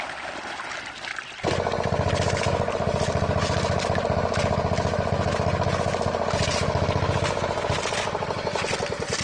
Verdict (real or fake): real